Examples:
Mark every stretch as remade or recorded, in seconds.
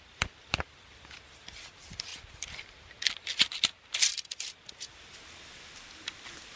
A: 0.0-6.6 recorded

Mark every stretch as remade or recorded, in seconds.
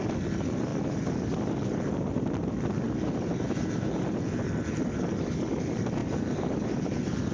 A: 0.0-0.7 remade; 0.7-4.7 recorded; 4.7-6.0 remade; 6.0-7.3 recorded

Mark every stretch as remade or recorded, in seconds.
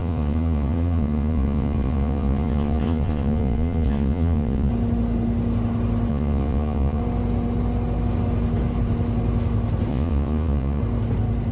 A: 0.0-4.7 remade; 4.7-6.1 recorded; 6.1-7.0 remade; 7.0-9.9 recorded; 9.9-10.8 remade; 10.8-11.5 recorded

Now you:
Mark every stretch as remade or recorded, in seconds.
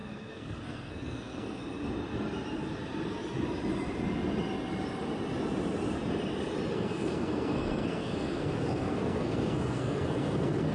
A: 0.0-1.6 remade; 1.6-6.7 recorded; 6.7-10.7 remade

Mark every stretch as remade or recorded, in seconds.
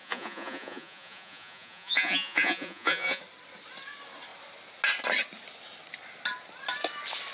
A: 0.0-3.2 remade; 3.2-7.3 recorded